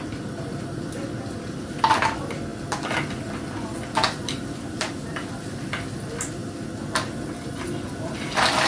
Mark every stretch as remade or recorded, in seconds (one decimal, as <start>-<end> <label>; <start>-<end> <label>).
0.0-2.5 remade; 2.5-3.8 recorded; 3.8-6.4 remade; 6.4-7.9 recorded; 7.9-8.7 remade